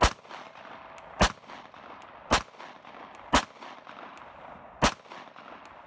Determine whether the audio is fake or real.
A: real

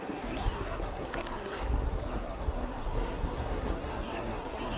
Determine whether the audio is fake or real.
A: fake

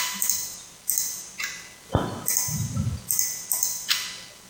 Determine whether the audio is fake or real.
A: real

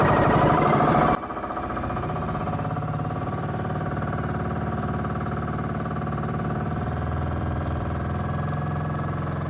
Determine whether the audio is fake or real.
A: fake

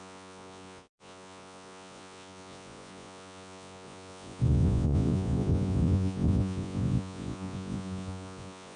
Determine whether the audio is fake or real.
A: fake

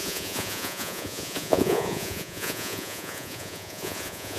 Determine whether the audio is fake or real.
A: fake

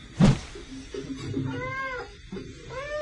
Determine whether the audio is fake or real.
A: real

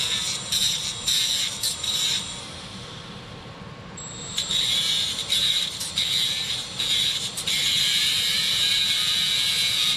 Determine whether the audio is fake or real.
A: fake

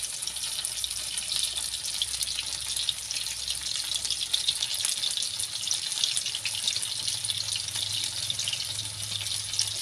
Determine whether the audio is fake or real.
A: real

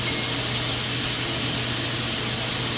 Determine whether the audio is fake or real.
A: real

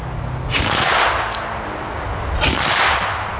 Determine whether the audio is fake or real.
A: real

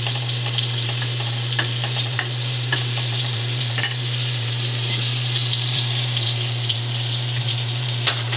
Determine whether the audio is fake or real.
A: fake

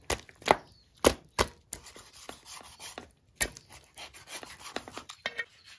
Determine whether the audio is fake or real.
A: real